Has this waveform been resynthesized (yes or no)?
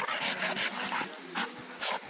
no